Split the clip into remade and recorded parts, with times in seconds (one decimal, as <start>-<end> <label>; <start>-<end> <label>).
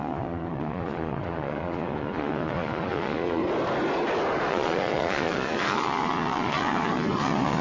0.0-3.4 remade; 3.4-4.5 recorded; 4.5-7.6 remade